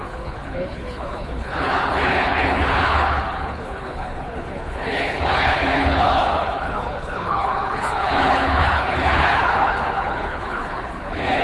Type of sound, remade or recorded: remade